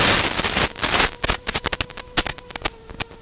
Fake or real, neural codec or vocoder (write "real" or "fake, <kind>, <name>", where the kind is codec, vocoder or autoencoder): real